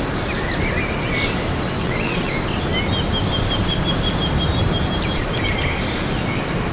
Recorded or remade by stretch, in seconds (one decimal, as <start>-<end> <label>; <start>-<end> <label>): 0.0-1.8 recorded; 1.8-2.3 remade; 2.3-6.7 recorded